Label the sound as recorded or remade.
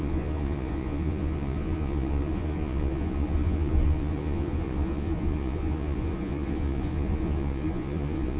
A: remade